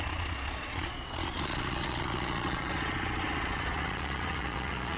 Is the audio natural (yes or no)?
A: no